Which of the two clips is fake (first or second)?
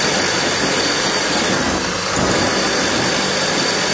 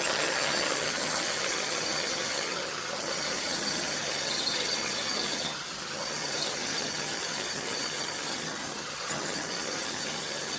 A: second